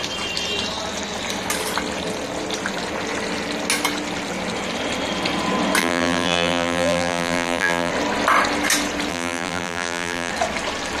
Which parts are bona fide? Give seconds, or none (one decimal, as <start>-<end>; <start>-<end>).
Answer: 0.0-5.8; 7.9-9.1; 10.3-11.0

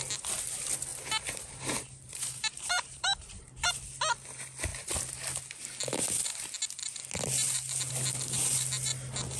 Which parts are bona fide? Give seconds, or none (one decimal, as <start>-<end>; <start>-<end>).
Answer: 0.0-0.9; 3.7-9.4

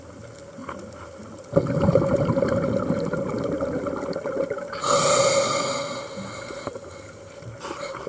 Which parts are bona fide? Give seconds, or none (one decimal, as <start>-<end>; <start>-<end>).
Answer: 0.0-8.1

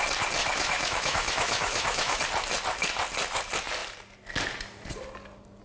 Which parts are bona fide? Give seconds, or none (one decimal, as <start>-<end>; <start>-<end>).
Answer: 0.0-0.4; 2.2-5.6